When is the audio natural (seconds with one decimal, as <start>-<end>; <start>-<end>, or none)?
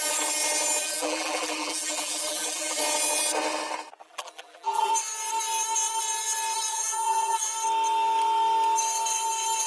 0.0-0.8; 2.8-4.0; 4.9-6.7; 7.5-9.7